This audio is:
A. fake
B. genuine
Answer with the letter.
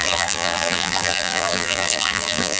A